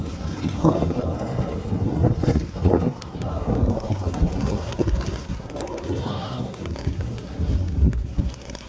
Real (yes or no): no